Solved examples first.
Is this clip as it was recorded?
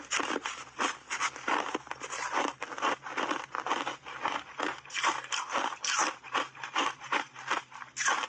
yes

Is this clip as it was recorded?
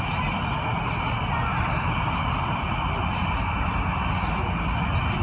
yes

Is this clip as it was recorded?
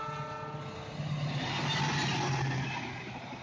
yes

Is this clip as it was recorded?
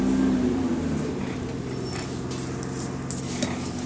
yes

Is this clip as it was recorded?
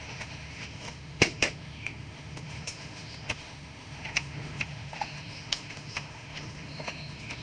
no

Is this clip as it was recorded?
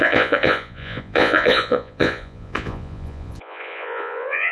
no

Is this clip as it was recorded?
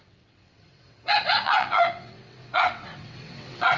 no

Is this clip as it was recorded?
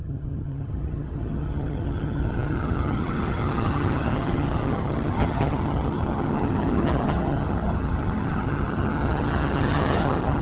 no